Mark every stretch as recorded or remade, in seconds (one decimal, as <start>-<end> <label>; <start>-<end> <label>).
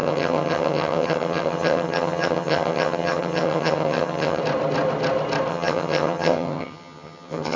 0.0-4.4 remade; 4.4-5.5 recorded; 5.5-7.6 remade